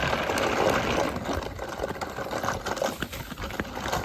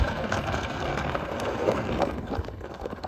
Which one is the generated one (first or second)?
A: second